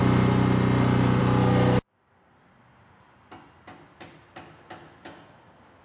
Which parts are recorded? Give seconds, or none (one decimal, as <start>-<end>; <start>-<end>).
0.0-5.8